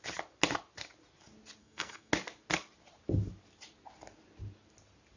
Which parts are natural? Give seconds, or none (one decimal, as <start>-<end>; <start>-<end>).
0.0-1.6; 2.1-5.2